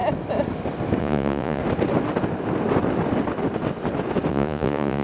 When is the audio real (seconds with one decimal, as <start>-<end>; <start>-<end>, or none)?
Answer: 0.0-1.0; 1.6-4.3